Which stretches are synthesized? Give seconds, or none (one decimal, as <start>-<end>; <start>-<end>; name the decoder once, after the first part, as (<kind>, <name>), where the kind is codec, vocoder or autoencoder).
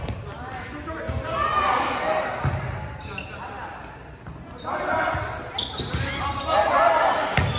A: 6.3-6.8 (vocoder, BigVGAN v2)